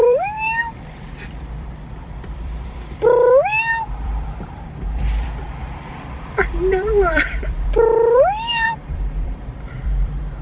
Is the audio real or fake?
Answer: fake